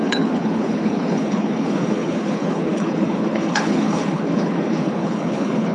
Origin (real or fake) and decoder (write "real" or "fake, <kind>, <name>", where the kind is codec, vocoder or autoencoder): fake, codec, HILCodec